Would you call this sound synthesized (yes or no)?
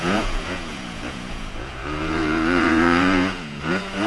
yes